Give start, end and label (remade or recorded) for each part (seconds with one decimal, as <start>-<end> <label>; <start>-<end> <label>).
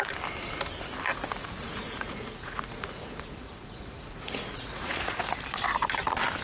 0.0-1.4 recorded; 1.4-5.2 remade; 5.2-6.4 recorded